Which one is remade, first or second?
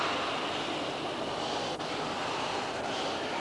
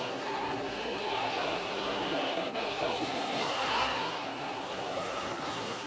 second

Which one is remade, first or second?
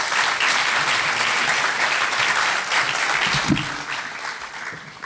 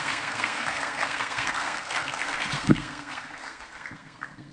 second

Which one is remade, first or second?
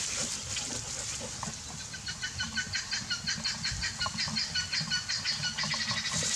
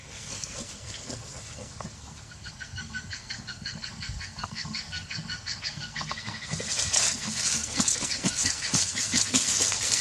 second